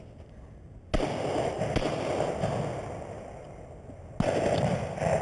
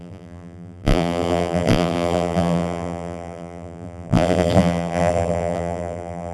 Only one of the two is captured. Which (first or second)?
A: first